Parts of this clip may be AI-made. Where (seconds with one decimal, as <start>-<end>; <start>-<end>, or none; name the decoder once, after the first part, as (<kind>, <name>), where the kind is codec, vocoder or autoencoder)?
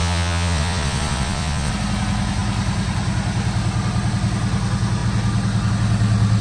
0.0-1.7 (vocoder, Vocos)